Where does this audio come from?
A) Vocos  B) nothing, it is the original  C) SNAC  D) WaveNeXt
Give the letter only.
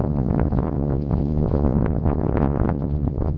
A